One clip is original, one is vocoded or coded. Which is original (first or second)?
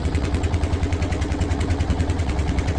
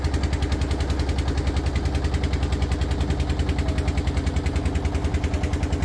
second